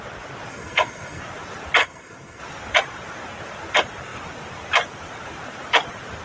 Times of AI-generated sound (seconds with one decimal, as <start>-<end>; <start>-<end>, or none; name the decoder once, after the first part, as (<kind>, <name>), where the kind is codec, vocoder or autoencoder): 0.5-1.2 (codec, SNAC); 1.8-2.4